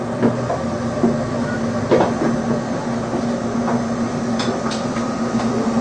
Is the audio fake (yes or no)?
no